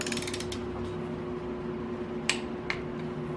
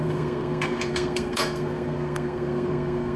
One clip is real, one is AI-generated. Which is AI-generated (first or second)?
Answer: second